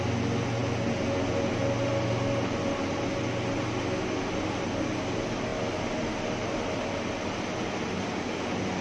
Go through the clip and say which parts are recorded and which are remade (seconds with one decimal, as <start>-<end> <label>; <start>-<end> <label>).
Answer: 0.0-8.8 recorded